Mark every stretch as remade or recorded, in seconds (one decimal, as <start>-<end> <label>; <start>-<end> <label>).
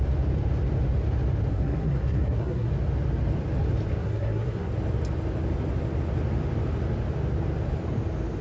0.0-1.5 recorded; 1.5-2.7 remade; 2.7-3.9 recorded; 3.9-4.7 remade; 4.7-8.4 recorded